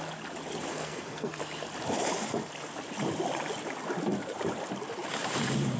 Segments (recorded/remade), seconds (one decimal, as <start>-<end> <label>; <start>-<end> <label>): 0.0-0.7 recorded; 0.7-1.4 remade; 1.4-5.8 recorded